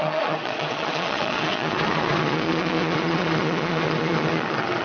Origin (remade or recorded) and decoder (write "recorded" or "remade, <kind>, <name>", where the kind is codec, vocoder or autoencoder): remade, vocoder, Vocos